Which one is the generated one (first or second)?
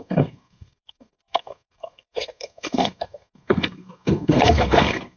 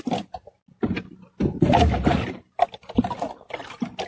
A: first